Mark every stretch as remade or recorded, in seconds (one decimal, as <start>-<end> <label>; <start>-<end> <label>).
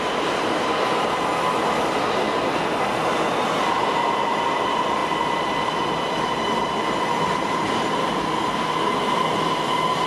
0.0-10.1 recorded